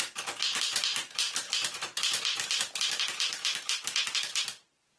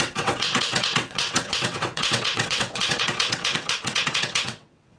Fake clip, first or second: second